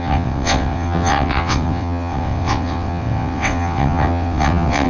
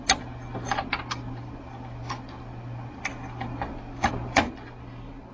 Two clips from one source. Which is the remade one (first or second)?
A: first